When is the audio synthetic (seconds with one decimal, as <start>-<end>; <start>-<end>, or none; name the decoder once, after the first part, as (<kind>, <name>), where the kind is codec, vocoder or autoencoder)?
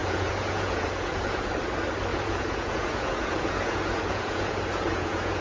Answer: 0.0-1.5 (vocoder, Vocos); 2.1-5.4